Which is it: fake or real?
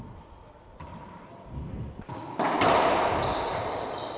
real